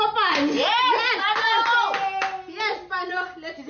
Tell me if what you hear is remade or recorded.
recorded